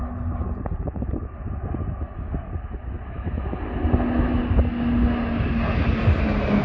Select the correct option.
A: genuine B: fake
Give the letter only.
A